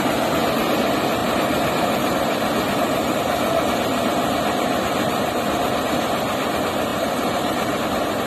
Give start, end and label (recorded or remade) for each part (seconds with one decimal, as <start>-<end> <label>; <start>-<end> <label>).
0.0-1.2 recorded; 1.2-3.2 remade; 3.2-6.9 recorded; 6.9-7.8 remade; 7.8-8.3 recorded